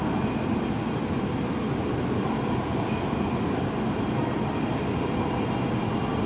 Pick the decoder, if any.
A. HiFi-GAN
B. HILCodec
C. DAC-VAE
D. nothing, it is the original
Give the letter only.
D